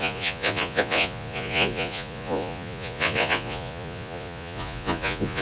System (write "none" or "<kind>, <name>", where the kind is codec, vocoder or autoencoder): vocoder, Vocos